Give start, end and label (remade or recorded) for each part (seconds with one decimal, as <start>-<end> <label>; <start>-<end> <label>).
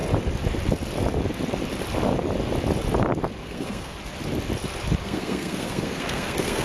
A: 0.0-3.4 recorded; 3.4-3.9 remade; 3.9-5.0 recorded; 5.0-6.6 remade